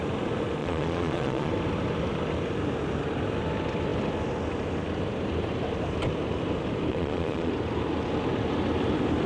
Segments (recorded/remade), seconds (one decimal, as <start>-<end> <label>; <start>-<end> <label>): 0.0-0.6 recorded; 0.6-1.5 remade; 1.5-6.9 recorded; 6.9-7.5 remade; 7.5-9.3 recorded

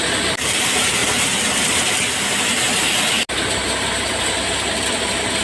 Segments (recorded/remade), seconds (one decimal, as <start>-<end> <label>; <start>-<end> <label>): 0.0-5.4 recorded